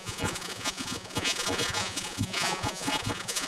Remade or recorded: remade